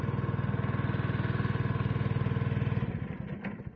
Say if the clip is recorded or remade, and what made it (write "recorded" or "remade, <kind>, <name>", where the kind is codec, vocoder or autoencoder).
recorded